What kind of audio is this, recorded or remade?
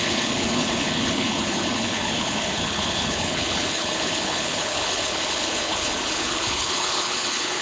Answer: remade